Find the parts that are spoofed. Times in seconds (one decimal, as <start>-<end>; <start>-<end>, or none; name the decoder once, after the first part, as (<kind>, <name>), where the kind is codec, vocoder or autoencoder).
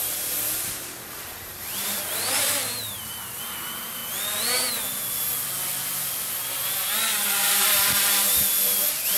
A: 0.0-4.0 (vocoder, BigVGAN v2); 8.5-9.2